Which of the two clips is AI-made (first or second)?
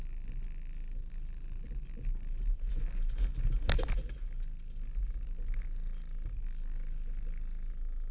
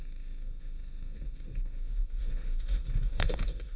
second